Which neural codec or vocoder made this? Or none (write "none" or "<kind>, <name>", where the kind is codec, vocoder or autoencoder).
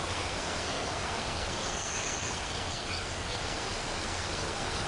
codec, SNAC